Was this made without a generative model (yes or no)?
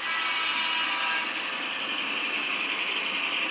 yes